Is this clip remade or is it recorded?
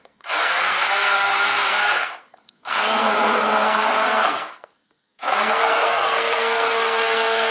remade